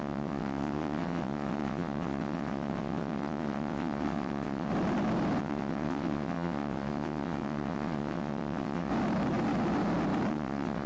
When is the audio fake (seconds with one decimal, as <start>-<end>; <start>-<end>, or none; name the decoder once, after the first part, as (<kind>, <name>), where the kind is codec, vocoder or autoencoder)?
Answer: 0.0-4.7 (vocoder, WaveNeXt); 5.4-8.9; 10.3-10.9